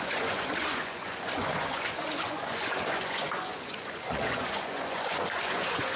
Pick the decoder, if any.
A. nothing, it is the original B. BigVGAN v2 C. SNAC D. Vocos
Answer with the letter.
D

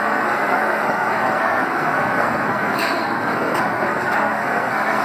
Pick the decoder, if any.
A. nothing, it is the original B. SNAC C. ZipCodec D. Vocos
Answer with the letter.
B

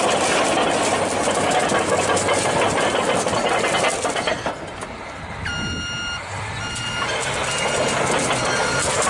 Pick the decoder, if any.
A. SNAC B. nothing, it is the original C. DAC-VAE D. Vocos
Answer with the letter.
B